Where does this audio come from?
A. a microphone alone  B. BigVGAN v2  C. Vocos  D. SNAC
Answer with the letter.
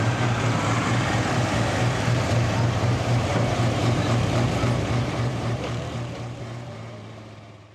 B